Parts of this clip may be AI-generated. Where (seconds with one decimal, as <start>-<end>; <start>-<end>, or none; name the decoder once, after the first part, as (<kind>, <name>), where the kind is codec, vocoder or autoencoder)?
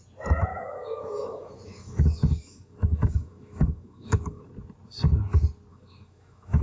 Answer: 0.5-4.5 (autoencoder, DAC-VAE); 5.7-6.6